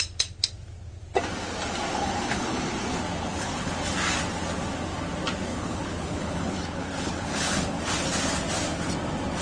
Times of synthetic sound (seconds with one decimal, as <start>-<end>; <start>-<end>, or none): 1.9-2.7; 3.2-3.7; 5.5-7.8